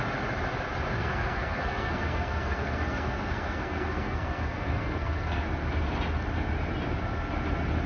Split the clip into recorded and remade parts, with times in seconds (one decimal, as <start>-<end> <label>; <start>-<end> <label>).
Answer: 0.0-1.0 recorded; 1.0-5.4 remade; 5.4-7.9 recorded